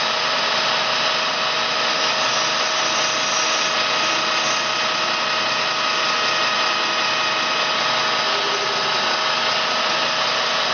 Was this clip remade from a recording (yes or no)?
no